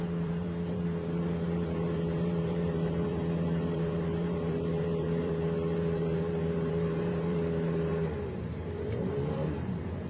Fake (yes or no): yes